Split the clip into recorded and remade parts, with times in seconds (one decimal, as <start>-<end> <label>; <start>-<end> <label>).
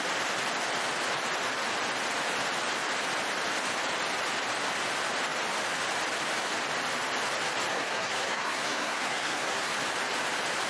0.0-7.7 recorded; 7.7-9.7 remade; 9.7-10.7 recorded